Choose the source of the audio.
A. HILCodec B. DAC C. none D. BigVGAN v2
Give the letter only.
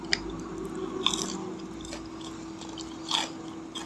D